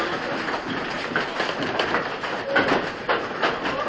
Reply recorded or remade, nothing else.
recorded